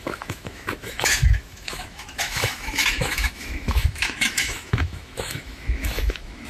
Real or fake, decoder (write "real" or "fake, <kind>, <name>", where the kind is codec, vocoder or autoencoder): fake, autoencoder, DAC-VAE